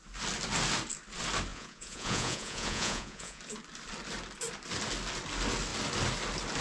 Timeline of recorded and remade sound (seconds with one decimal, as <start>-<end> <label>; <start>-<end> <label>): 0.0-1.5 recorded; 1.5-3.4 remade; 3.4-6.6 recorded